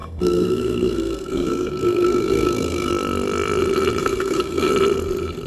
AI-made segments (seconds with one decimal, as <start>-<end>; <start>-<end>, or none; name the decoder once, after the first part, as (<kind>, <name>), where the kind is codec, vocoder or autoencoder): 0.0-2.9 (codec, SNAC); 4.0-4.7